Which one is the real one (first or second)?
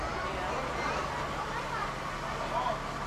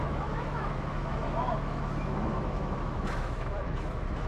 first